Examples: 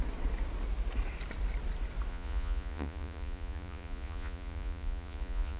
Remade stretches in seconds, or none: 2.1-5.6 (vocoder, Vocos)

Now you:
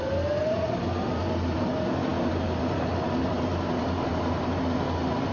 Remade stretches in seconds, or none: none